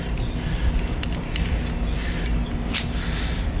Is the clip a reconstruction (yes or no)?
no